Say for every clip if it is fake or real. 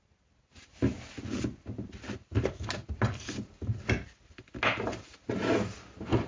real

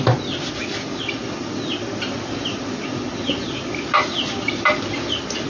real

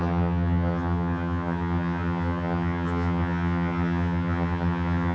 fake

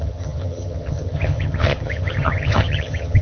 fake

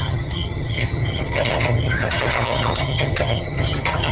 fake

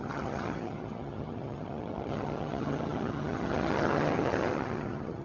fake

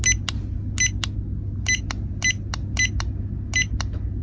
real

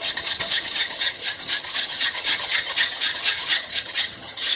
fake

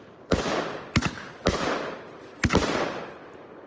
real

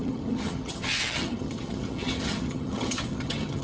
fake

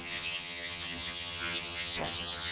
fake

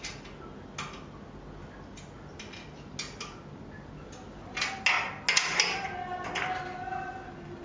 real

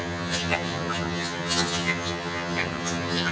fake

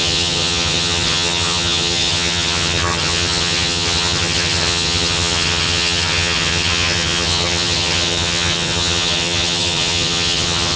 fake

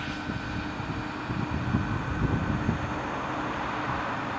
real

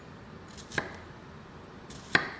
real